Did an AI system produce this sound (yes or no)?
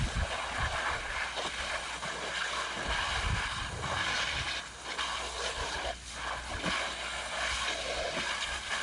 no